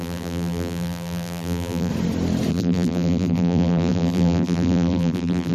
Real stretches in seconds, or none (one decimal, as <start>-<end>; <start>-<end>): 1.9-2.5